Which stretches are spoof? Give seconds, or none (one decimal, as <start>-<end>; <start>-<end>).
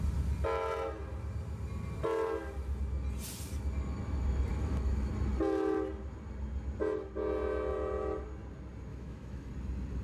4.5-5.1; 8.9-9.5